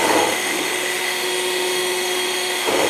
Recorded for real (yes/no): no